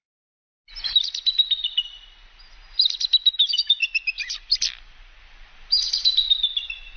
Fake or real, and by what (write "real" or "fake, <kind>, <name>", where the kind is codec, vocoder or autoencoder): real